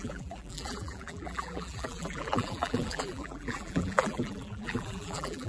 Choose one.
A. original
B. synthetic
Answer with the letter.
B